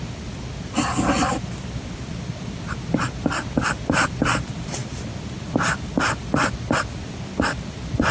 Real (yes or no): yes